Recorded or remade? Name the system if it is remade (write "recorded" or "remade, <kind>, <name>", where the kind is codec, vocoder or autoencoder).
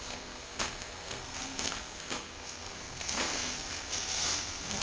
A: remade, codec, SNAC